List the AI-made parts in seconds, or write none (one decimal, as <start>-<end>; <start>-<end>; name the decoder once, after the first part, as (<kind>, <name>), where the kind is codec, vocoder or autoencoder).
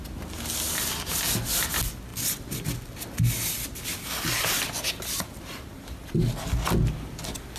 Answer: none